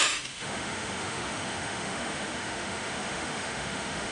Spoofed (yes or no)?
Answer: yes